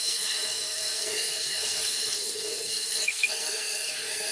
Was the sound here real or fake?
fake